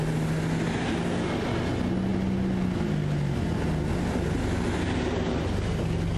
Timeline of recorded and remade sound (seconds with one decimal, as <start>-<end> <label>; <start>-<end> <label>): 0.0-6.2 recorded